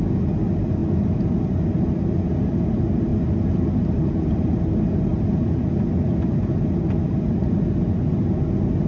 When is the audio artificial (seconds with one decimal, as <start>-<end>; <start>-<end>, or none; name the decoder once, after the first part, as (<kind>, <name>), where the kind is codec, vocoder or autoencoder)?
none